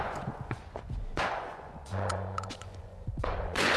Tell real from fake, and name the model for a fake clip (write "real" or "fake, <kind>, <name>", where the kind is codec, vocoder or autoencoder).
fake, vocoder, Vocos